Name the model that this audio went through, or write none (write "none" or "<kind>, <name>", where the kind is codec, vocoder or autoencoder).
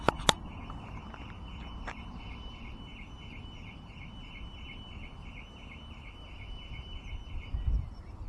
vocoder, BigVGAN v2